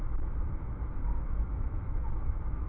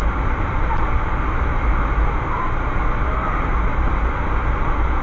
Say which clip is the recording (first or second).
second